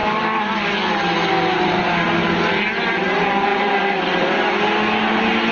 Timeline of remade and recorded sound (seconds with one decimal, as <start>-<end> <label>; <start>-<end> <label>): 0.0-3.5 recorded; 3.5-4.3 remade; 4.3-5.5 recorded